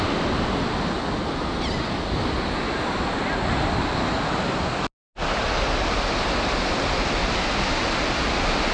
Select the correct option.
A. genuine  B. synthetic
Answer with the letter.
A